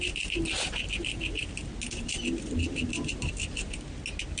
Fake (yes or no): no